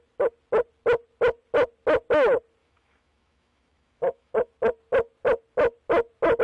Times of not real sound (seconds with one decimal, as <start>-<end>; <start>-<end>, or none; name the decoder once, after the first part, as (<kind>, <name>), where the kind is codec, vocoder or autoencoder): 2.6-4.5 (autoencoder, DAC-VAE)